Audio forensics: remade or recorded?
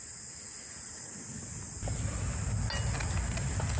recorded